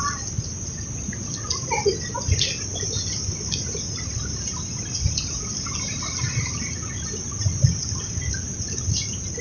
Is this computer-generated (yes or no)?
no